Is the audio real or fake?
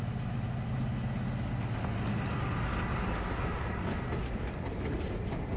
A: real